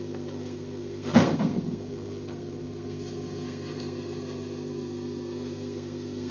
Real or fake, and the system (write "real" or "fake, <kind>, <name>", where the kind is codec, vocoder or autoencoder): fake, codec, SNAC